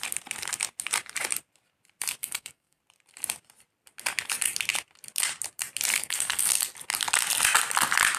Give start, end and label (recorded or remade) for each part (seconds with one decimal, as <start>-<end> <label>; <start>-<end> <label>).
0.0-2.2 recorded; 2.2-2.8 remade; 2.8-5.9 recorded; 5.9-6.6 remade; 6.6-8.2 recorded